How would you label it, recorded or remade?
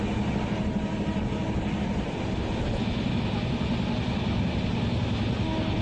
recorded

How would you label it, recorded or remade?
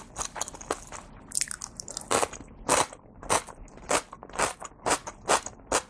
recorded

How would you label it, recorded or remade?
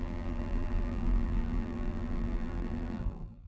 remade